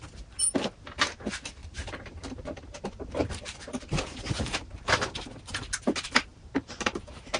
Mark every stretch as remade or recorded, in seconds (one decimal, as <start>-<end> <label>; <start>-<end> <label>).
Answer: 0.0-1.6 recorded; 1.6-5.3 remade; 5.3-6.3 recorded; 6.3-7.4 remade